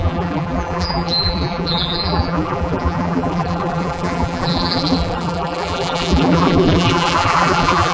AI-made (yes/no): yes